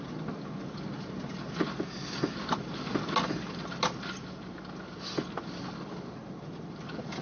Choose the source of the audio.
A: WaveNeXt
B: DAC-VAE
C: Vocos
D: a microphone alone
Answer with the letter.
D